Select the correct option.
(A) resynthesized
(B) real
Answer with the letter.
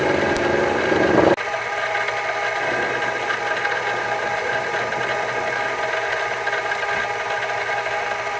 B